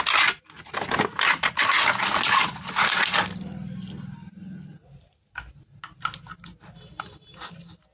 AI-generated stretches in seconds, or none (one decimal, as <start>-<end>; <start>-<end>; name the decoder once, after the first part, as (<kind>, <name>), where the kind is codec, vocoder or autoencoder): none